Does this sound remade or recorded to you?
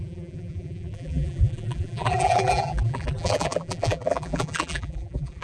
remade